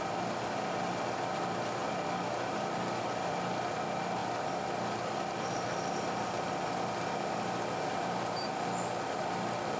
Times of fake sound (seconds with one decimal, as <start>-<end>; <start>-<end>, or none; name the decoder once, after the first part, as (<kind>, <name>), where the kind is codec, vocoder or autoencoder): none